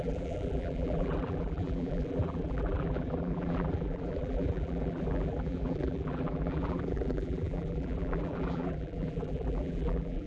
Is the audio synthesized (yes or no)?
yes